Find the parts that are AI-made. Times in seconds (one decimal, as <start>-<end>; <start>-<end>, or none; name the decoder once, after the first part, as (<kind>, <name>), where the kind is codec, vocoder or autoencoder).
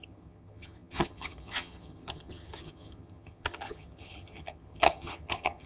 0.0-5.7 (vocoder, HiFi-GAN)